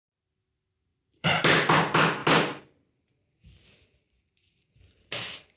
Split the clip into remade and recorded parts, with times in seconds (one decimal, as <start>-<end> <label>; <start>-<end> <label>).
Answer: 0.0-0.9 recorded; 0.9-1.4 remade; 1.4-5.6 recorded